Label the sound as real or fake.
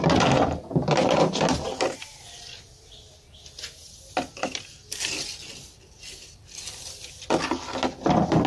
real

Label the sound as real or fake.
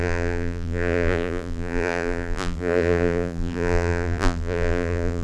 fake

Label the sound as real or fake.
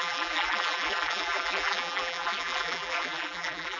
fake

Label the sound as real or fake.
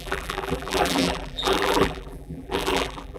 fake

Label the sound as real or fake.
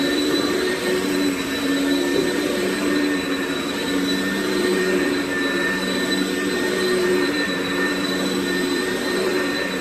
fake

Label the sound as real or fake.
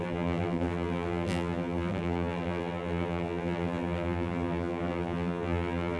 fake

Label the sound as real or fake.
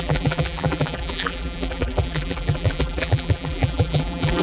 fake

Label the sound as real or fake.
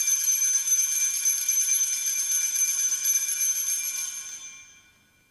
real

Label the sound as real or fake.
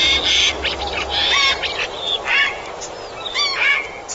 real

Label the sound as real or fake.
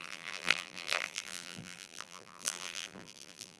fake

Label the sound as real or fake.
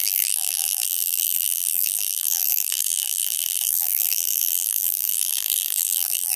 fake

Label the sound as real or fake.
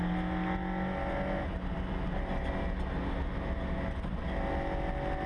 real